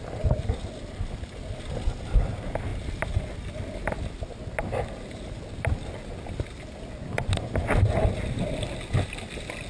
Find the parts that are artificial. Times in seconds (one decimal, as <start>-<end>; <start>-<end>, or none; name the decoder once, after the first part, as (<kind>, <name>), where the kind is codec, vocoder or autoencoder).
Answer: none